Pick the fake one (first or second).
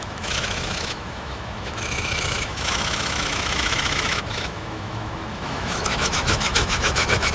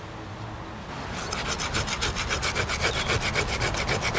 first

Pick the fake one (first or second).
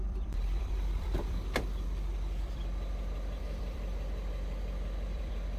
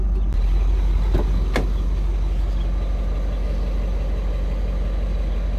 first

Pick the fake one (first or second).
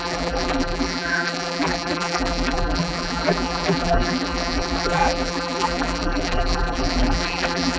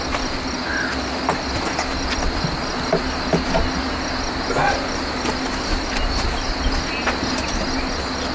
first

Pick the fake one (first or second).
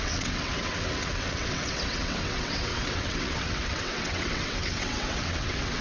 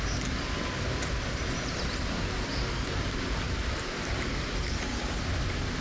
first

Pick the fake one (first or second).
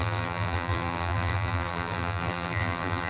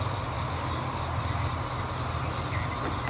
first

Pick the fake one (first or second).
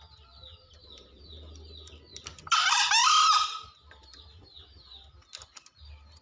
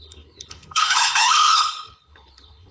second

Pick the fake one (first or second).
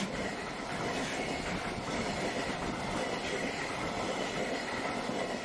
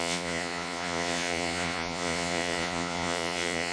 second